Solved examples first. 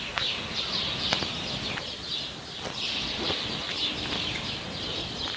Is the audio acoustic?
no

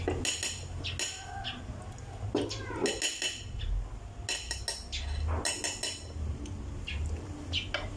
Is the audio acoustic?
yes